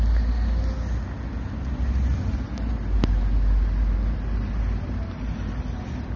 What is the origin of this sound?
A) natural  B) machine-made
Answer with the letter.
A